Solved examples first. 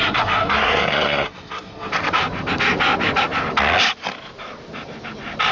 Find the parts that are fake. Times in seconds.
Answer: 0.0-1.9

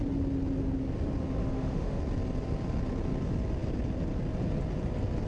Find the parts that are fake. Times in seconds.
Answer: 1.4-2.0